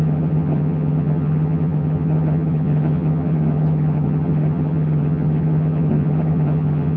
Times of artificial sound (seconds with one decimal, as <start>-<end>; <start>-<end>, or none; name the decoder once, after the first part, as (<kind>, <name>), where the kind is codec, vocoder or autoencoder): 0.0-7.0 (vocoder, HiFi-GAN)